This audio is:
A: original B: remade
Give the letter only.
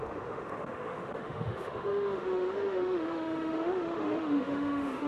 B